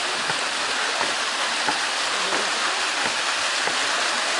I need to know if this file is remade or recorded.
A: recorded